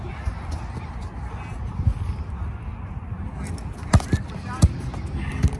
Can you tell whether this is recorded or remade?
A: recorded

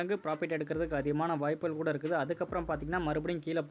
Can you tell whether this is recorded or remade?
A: recorded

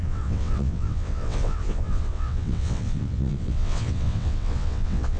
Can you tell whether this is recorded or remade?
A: remade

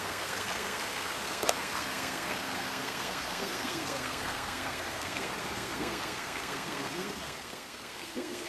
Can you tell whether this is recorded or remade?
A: remade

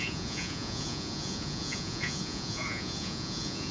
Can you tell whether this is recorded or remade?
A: remade